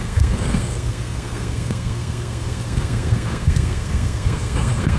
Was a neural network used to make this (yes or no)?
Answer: yes